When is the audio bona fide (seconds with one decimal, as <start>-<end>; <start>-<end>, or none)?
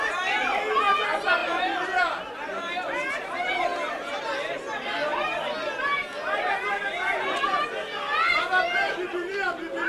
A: 0.0-9.9